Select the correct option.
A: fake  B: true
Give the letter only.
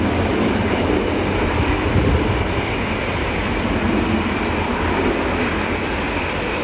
B